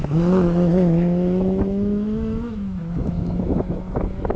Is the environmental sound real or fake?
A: fake